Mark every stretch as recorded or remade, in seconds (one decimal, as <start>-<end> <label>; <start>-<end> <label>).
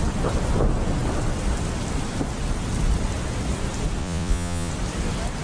0.0-4.0 recorded; 4.0-4.7 remade; 4.7-5.4 recorded